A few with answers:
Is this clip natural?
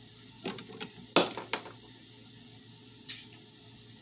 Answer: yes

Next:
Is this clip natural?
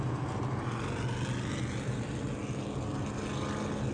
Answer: yes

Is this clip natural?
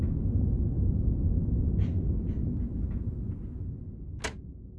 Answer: yes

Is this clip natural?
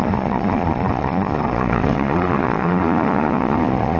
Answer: no